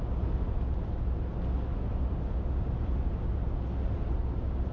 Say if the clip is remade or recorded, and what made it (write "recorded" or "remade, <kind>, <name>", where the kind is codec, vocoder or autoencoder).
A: recorded